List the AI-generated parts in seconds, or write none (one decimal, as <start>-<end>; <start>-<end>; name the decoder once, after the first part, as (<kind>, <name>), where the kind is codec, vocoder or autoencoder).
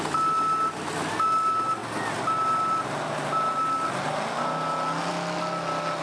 none